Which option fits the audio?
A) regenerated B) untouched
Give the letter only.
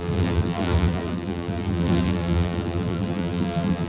A